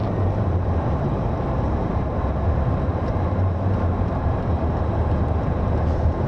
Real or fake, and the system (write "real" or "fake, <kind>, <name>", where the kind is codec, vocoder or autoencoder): fake, vocoder, BigVGAN v2